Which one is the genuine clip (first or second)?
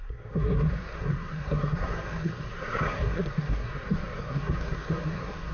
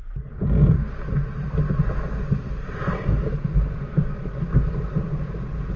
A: second